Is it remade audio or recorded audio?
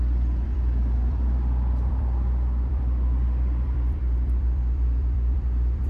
remade